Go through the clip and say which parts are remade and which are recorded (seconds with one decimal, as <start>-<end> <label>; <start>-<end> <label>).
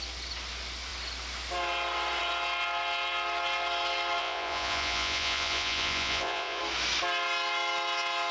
0.0-4.2 recorded; 4.2-6.6 remade; 6.6-8.3 recorded